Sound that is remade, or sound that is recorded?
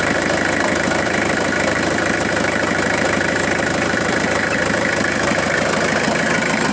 remade